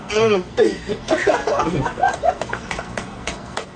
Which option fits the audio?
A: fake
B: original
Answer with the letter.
A